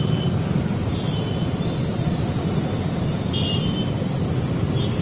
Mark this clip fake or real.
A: real